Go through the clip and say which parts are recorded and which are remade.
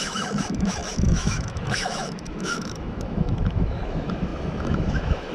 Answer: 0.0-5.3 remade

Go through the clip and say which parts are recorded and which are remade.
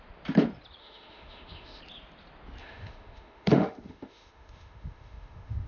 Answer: 0.0-0.8 recorded; 0.8-1.8 remade; 1.8-2.6 recorded; 2.6-5.7 remade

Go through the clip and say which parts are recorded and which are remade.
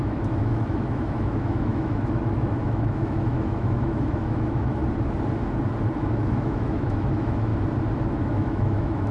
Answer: 0.0-4.8 remade; 4.8-6.2 recorded; 6.2-7.5 remade; 7.5-8.2 recorded; 8.2-9.1 remade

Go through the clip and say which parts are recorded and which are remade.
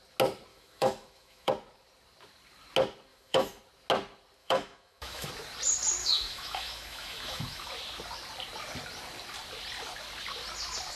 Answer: 0.0-0.5 recorded; 0.5-1.5 remade; 1.5-3.1 recorded; 3.1-3.6 remade; 3.6-4.4 recorded; 4.4-5.3 remade; 5.3-6.0 recorded; 6.0-7.7 remade; 7.7-11.0 recorded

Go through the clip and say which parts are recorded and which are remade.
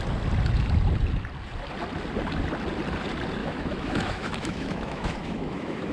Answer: 0.0-3.4 recorded; 3.4-5.9 remade